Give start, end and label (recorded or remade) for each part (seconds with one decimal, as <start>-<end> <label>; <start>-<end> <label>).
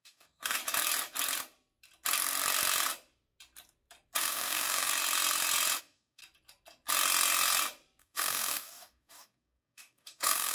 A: 0.0-0.6 remade; 0.6-4.2 recorded; 4.2-4.9 remade; 4.9-5.8 recorded; 5.8-6.2 remade; 6.2-8.0 recorded; 8.0-10.5 remade